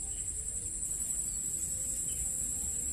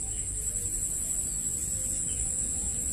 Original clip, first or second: first